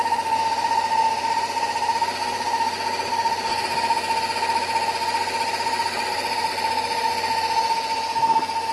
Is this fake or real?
real